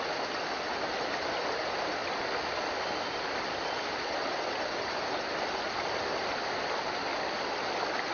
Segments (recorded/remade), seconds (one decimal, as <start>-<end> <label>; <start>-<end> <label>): 0.0-8.1 recorded